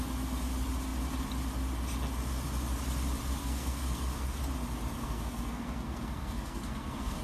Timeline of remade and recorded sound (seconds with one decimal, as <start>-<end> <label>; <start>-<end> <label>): 0.0-3.4 recorded; 3.4-4.4 remade; 4.4-5.0 recorded; 5.0-7.2 remade